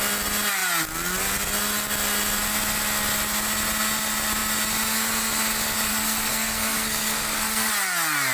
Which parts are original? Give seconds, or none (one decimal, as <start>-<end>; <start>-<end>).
0.0-5.9; 7.7-8.3